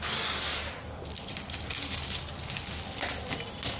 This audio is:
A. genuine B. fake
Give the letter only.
A